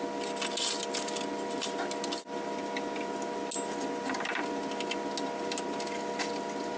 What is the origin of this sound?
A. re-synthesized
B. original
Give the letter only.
B